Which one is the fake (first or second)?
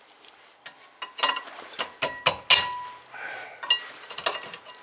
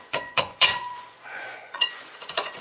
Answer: second